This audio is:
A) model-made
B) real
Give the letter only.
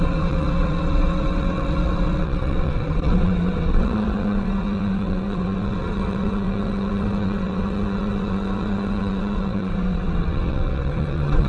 A